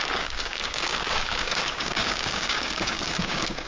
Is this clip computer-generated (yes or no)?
yes